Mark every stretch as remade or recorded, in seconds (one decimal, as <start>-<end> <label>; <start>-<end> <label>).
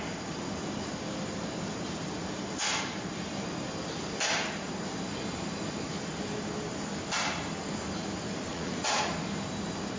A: 0.0-8.5 recorded; 8.5-9.1 remade; 9.1-10.0 recorded